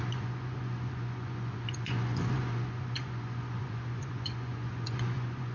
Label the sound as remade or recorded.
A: remade